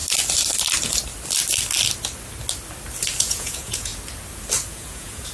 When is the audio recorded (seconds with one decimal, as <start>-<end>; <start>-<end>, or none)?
0.0-3.2; 3.9-4.6